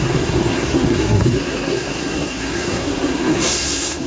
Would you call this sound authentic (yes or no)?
no